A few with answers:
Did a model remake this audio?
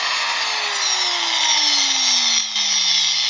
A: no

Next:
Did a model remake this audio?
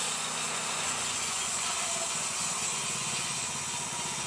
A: yes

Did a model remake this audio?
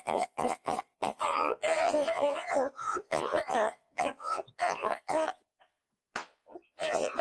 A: yes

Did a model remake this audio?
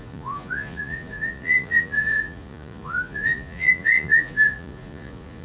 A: yes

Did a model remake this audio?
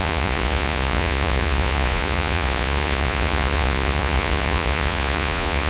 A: yes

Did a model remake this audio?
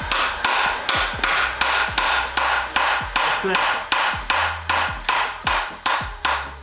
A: no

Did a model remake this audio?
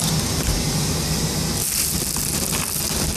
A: no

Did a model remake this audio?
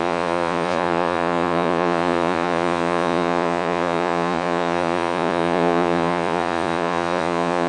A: yes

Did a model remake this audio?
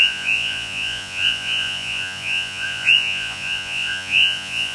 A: yes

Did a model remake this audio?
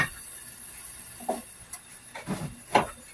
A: no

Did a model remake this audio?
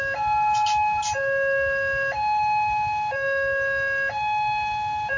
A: no